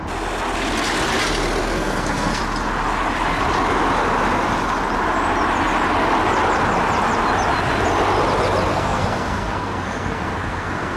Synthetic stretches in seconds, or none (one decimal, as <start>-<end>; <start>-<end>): 1.6-2.4; 8.7-11.0

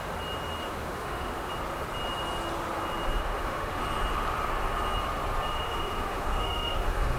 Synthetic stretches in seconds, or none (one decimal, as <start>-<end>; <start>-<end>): 0.6-1.5; 3.2-3.8; 5.5-7.2

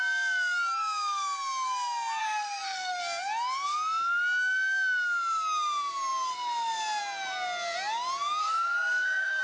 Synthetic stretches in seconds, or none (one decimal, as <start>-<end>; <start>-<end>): 2.2-3.0; 8.4-9.4

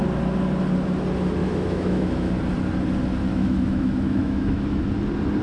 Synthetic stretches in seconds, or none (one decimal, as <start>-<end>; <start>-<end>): 1.4-2.3; 3.3-4.8